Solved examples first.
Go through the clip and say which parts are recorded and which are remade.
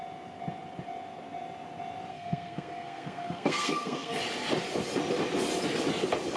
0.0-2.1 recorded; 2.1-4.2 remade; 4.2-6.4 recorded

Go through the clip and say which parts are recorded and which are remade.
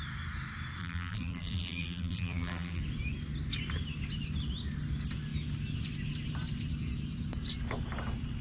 0.0-0.8 recorded; 0.8-2.8 remade; 2.8-8.4 recorded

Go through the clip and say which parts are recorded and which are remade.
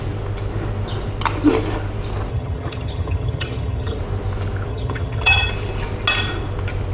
0.0-2.3 recorded; 2.3-4.0 remade; 4.0-4.7 recorded; 4.7-5.5 remade; 5.5-6.9 recorded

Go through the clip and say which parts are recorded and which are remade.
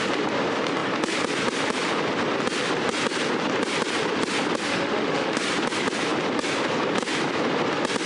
0.0-4.6 recorded; 4.6-5.4 remade; 5.4-8.1 recorded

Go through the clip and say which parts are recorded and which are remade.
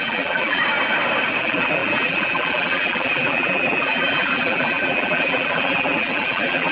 0.0-0.6 remade; 0.6-1.4 recorded; 1.4-6.7 remade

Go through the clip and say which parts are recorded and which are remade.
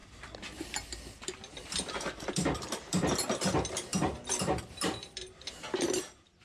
0.0-0.6 recorded; 0.6-6.4 remade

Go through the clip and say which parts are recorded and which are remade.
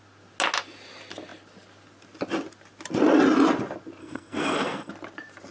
0.0-4.0 recorded; 4.0-4.9 remade; 4.9-5.5 recorded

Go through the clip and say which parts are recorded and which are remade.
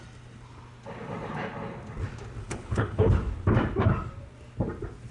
0.0-2.4 recorded; 2.4-3.1 remade; 3.1-5.1 recorded